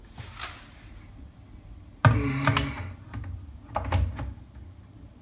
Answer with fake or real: real